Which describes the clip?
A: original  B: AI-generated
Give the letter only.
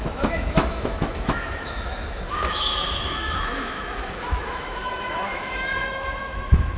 B